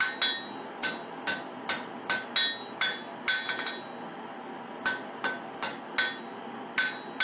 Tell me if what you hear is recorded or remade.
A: recorded